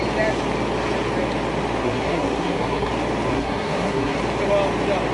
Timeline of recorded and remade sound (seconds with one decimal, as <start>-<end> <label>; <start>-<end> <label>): 0.0-1.8 recorded; 1.8-2.9 remade; 2.9-3.3 recorded; 3.3-4.2 remade; 4.2-5.1 recorded